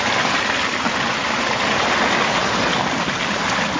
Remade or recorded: recorded